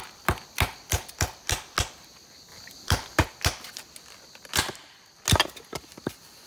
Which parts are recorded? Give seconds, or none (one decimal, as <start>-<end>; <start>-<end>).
0.0-2.5; 3.2-6.5